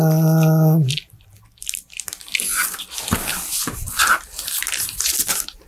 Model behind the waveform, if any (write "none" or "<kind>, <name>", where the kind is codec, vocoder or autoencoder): none